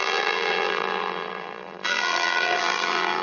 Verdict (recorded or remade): remade